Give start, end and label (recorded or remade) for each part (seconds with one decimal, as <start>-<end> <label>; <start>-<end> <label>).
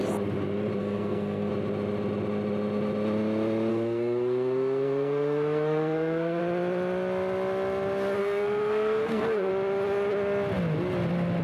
0.0-0.8 recorded; 0.8-1.5 remade; 1.5-3.7 recorded; 3.7-6.4 remade; 6.4-8.2 recorded; 8.2-9.5 remade; 9.5-11.4 recorded